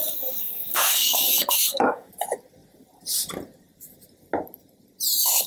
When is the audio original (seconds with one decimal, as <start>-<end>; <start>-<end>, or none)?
2.1-5.5